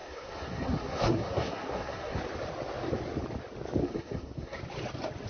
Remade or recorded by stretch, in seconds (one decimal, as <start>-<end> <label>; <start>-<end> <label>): 0.0-2.2 remade; 2.2-3.8 recorded; 3.8-4.6 remade; 4.6-5.3 recorded

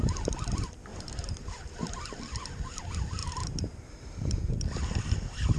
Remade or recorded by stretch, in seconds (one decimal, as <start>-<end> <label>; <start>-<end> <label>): 0.0-0.9 recorded; 0.9-2.4 remade; 2.4-3.2 recorded; 3.2-4.5 remade; 4.5-5.6 recorded

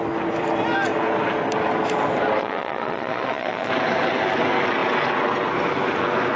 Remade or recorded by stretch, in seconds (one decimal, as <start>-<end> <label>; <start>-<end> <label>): 0.0-2.4 recorded; 2.4-3.7 remade; 3.7-6.4 recorded

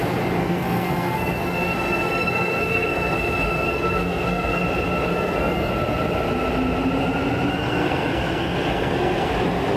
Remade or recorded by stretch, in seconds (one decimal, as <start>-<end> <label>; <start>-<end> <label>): 0.0-0.4 recorded; 0.4-4.6 remade; 4.6-5.1 recorded; 5.1-5.7 remade; 5.7-7.5 recorded; 7.5-9.3 remade; 9.3-9.8 recorded

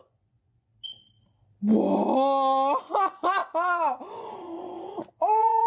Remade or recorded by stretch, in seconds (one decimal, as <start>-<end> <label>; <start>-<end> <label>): 0.0-0.7 remade; 0.7-2.8 recorded; 2.8-5.7 remade